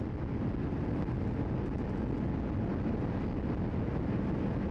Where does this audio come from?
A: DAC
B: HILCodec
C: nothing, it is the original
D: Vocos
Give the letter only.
C